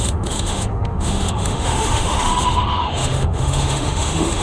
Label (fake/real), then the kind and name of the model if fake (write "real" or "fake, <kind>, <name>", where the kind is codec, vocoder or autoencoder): fake, autoencoder, DAC-VAE